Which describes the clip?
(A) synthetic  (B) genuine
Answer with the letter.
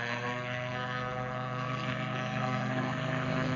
A